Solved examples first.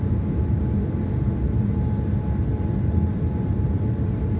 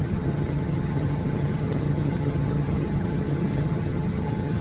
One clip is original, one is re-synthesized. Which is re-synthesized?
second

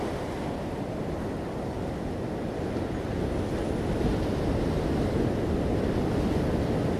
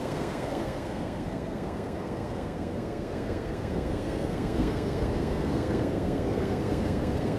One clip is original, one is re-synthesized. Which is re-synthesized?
second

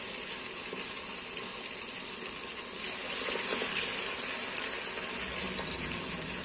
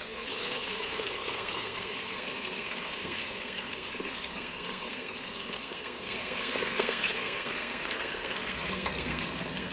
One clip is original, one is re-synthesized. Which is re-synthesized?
second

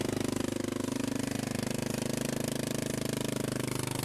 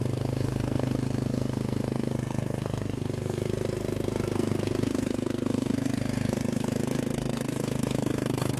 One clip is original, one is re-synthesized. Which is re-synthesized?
second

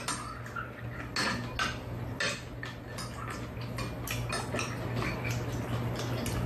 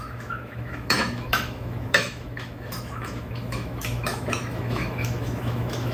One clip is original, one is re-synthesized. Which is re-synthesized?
second